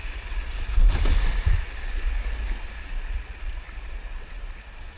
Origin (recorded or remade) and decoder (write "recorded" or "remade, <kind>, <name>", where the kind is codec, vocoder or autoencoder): recorded